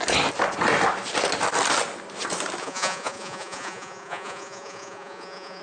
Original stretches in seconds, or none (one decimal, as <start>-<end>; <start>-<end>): 0.0-2.6